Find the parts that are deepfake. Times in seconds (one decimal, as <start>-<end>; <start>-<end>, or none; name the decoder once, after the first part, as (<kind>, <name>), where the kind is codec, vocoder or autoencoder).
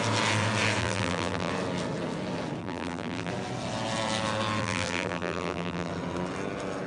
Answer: 0.8-1.5 (vocoder, BigVGAN v2); 2.6-3.3; 4.6-5.9